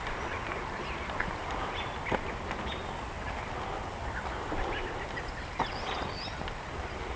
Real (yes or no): no